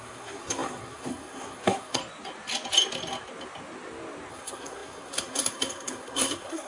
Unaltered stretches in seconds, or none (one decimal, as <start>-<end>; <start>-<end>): 2.0-4.3